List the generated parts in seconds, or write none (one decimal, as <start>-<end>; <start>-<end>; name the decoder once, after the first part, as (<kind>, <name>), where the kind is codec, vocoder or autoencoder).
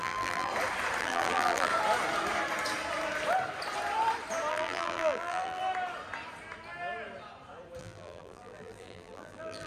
0.0-0.5 (vocoder, BigVGAN v2); 1.0-1.7; 4.5-5.6; 7.8-9.7